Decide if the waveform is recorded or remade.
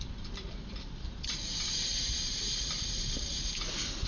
remade